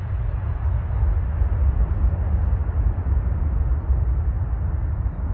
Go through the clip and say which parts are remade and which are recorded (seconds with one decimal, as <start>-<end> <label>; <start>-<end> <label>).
0.0-5.3 recorded